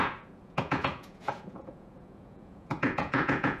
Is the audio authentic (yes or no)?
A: no